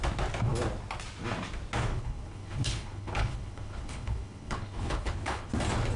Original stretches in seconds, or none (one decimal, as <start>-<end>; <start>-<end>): 0.0-1.9; 5.5-6.0